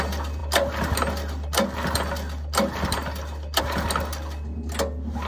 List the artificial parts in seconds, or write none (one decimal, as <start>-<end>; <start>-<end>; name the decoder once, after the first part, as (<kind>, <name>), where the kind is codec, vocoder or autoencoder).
none